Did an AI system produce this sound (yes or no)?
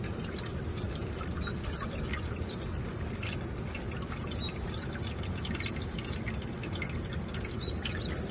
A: no